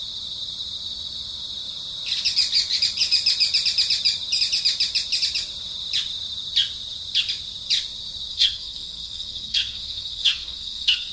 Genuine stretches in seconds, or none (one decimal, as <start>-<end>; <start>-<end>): 0.0-8.3